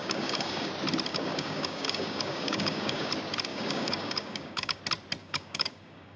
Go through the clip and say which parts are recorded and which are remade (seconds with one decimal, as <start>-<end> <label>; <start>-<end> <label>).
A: 0.0-0.7 remade; 0.7-1.1 recorded; 1.1-3.1 remade; 3.1-3.5 recorded; 3.5-4.8 remade; 4.8-5.2 recorded; 5.2-6.2 remade